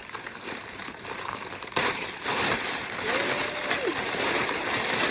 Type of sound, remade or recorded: remade